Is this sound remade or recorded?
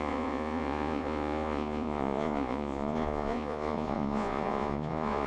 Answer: remade